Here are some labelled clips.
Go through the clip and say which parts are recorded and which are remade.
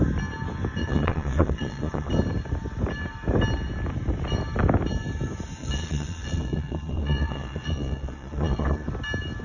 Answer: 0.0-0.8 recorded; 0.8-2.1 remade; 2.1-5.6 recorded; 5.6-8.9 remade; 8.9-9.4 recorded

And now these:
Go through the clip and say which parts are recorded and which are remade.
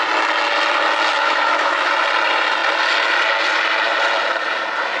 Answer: 0.0-1.1 recorded; 1.1-1.9 remade; 1.9-5.0 recorded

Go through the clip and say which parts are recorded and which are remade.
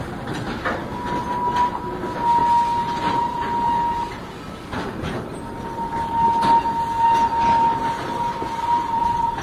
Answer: 0.0-9.4 recorded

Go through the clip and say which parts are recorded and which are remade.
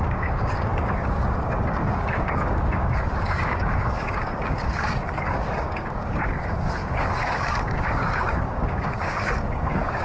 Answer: 0.0-10.0 remade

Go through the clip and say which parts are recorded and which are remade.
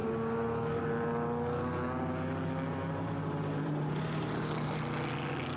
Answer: 0.0-2.7 recorded; 2.7-4.8 remade; 4.8-5.6 recorded